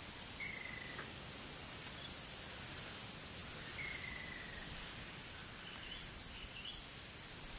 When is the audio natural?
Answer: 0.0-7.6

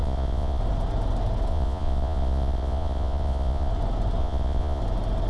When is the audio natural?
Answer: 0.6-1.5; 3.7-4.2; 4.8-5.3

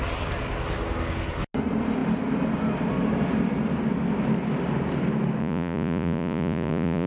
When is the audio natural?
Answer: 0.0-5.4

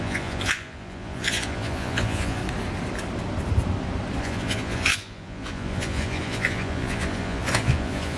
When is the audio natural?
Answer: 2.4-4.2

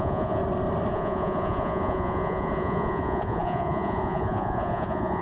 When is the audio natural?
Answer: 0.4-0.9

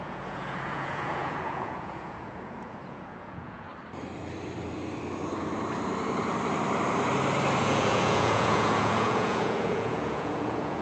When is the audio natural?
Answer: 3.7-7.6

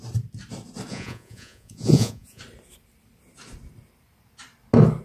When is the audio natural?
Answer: 0.0-0.9; 2.4-5.0